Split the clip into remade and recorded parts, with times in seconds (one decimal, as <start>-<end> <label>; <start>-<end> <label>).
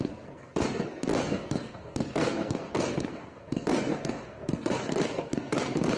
0.0-6.0 remade